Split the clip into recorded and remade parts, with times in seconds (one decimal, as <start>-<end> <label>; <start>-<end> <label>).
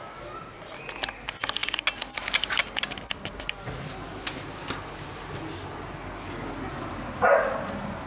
0.0-8.1 recorded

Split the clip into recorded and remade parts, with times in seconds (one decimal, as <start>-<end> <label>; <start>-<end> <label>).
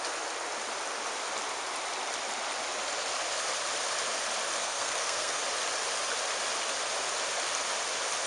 0.0-4.6 recorded; 4.6-5.4 remade; 5.4-8.3 recorded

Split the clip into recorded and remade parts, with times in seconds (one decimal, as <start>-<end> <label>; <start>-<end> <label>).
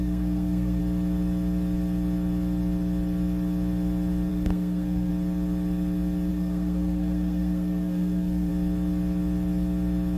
0.0-0.8 remade; 0.8-4.3 recorded; 4.3-5.1 remade; 5.1-6.3 recorded; 6.3-8.5 remade; 8.5-10.2 recorded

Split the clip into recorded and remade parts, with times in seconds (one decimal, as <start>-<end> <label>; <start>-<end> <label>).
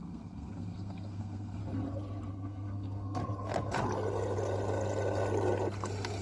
0.0-1.6 remade; 1.6-2.3 recorded; 2.3-3.2 remade; 3.2-6.2 recorded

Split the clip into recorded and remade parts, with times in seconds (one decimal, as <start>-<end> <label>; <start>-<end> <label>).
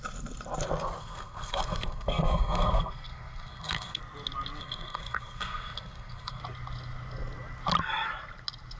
0.0-1.0 recorded; 1.0-4.0 remade; 4.0-4.6 recorded; 4.6-6.4 remade; 6.4-8.8 recorded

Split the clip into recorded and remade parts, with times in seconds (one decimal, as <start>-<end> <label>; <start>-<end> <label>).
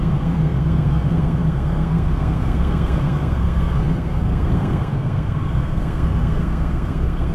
0.0-7.3 remade